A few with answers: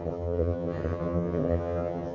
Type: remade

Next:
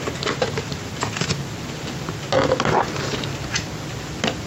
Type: recorded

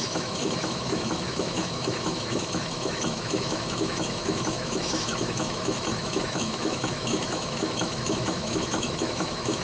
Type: remade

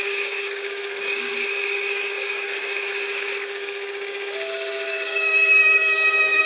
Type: remade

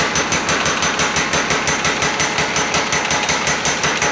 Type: recorded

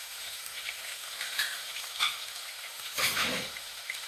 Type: remade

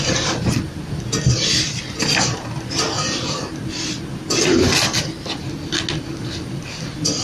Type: recorded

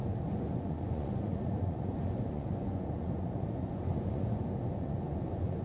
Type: remade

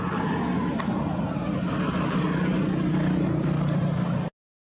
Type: recorded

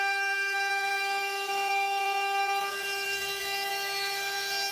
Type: remade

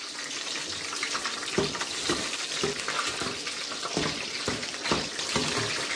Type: recorded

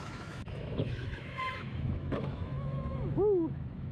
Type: remade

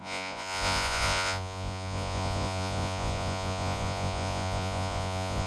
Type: remade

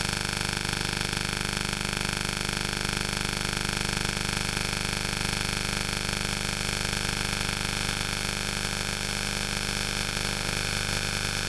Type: remade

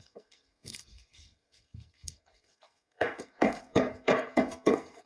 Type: remade